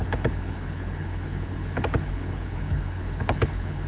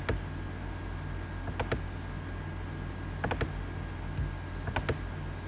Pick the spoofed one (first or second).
first